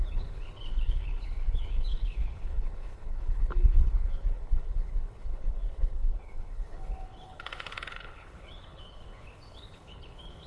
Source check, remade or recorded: remade